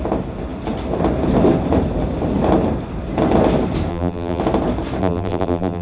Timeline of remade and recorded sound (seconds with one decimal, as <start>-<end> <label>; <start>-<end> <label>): 0.0-3.9 recorded; 3.9-4.4 remade; 4.4-5.0 recorded; 5.0-5.8 remade